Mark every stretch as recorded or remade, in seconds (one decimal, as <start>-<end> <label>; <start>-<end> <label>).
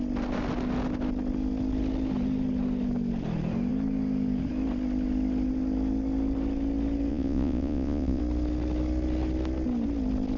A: 0.0-7.1 recorded; 7.1-8.2 remade; 8.2-10.4 recorded